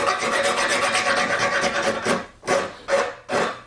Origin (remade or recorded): recorded